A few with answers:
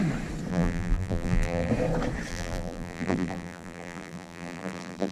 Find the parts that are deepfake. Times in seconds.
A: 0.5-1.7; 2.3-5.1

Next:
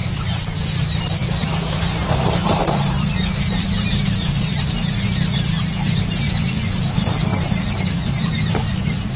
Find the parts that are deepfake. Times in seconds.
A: 0.0-0.7; 1.2-4.5; 7.3-8.3

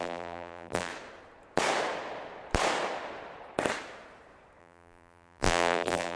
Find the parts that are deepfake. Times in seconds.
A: 0.0-0.9; 4.6-6.2

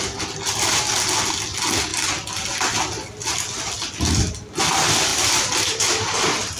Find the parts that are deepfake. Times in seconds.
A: 5.1-6.6

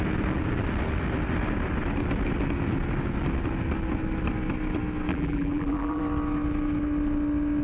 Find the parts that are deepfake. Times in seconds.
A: 5.1-6.0